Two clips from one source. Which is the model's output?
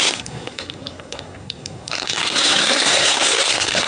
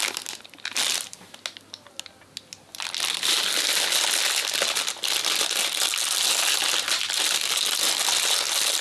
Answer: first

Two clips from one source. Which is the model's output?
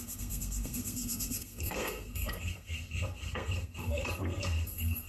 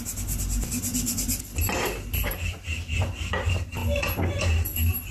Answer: first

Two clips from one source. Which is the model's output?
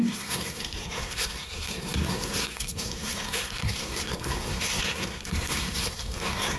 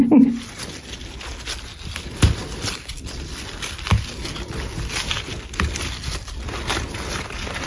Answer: first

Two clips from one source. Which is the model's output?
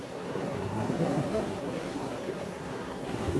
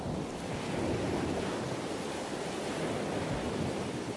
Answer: first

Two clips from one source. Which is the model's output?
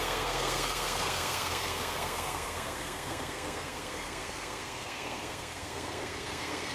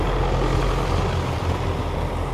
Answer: first